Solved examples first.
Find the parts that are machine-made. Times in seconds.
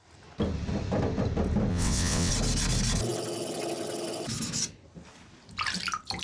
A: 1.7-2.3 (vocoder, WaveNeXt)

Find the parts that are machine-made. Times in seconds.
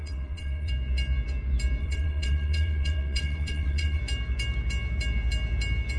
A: 0.0-0.7 (vocoder, WaveNeXt); 1.8-4.0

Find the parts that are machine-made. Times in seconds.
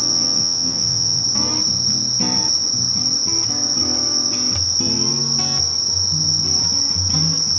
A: 0.0-1.2 (vocoder, WaveNeXt)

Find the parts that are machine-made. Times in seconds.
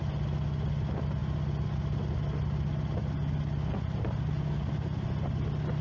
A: none